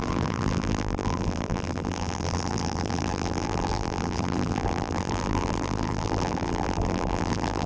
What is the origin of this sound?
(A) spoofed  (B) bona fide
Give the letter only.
A